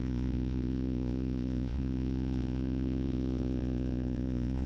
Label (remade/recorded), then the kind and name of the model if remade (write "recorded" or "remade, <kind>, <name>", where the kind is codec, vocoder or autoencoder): remade, vocoder, Vocos